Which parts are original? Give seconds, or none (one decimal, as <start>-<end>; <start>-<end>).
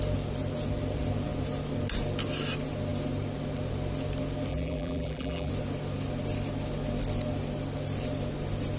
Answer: 0.0-4.5; 5.5-8.8